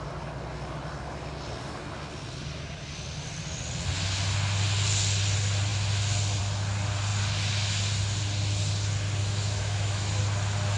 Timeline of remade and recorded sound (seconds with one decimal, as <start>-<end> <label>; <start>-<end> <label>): 0.0-9.2 recorded; 9.2-10.2 remade; 10.2-10.8 recorded